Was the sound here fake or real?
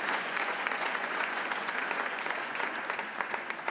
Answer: fake